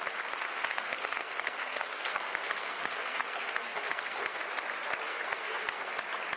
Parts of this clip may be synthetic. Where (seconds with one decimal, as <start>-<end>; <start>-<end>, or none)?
0.6-4.4; 5.1-5.9